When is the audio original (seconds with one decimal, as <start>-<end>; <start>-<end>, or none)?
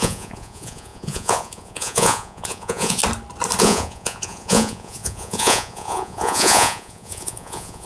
3.0-3.6